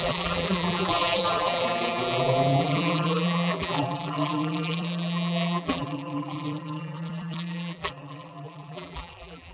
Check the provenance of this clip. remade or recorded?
remade